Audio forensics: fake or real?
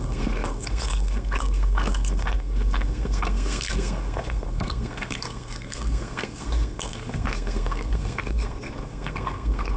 fake